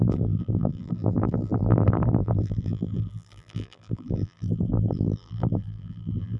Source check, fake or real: fake